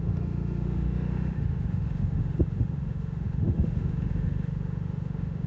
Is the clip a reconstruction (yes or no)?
yes